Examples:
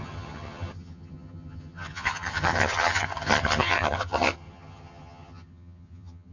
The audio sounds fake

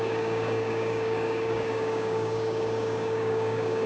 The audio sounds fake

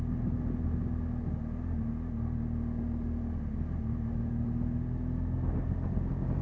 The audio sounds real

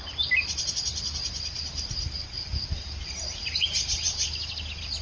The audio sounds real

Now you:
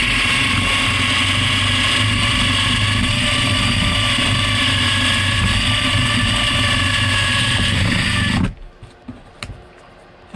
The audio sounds real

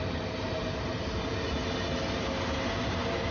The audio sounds real